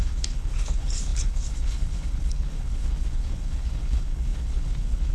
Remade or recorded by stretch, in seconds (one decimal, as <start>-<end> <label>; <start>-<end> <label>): 0.0-5.1 remade